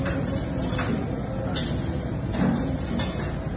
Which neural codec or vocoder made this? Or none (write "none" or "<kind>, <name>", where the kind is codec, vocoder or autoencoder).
none